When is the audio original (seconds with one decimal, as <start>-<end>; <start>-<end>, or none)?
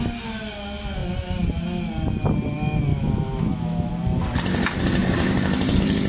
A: 0.0-2.9; 3.9-6.1